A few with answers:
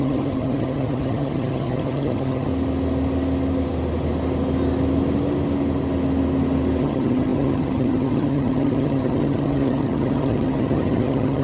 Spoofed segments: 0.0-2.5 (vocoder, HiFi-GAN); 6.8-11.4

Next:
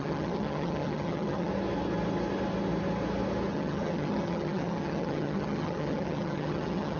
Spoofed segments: 0.0-1.5 (vocoder, HiFi-GAN); 3.5-7.0

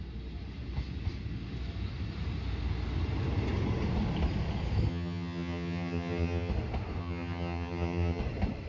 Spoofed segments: 4.9-6.5 (vocoder, HiFi-GAN); 7.0-8.2

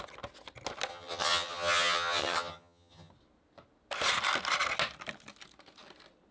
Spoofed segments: 0.9-3.1 (vocoder, HiFi-GAN)

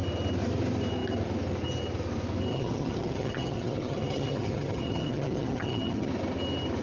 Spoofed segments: 2.5-6.1 (vocoder, HiFi-GAN)